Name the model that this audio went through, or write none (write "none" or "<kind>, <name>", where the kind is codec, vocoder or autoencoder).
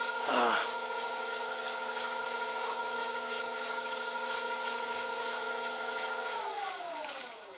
codec, DAC